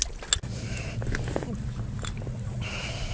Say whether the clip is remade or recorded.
recorded